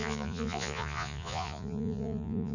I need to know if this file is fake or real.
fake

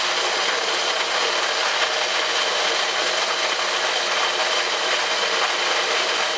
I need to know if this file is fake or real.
real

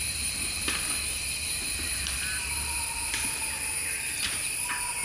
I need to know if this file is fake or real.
real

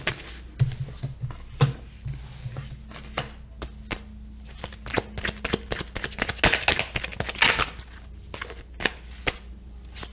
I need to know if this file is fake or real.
real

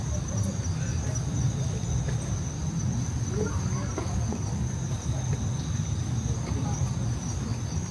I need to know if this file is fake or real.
real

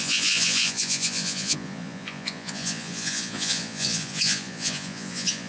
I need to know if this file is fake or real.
fake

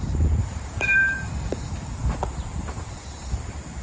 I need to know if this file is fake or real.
fake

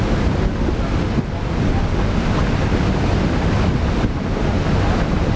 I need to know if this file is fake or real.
real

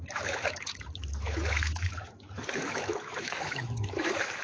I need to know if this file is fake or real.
fake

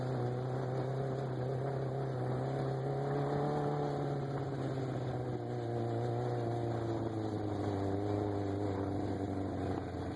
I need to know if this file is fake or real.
real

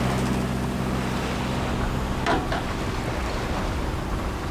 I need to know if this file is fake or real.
real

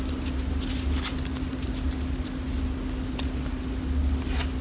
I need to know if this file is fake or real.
real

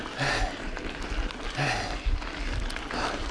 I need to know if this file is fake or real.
real